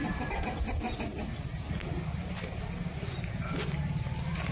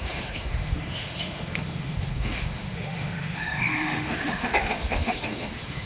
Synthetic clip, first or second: second